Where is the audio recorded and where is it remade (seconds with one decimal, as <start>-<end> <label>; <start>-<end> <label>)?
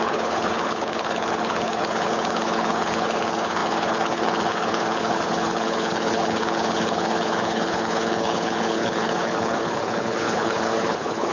0.0-11.3 remade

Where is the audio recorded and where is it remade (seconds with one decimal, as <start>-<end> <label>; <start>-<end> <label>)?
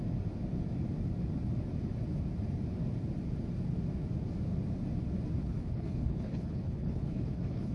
0.0-5.4 recorded; 5.4-7.7 remade